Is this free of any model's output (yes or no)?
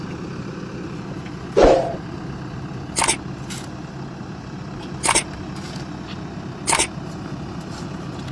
yes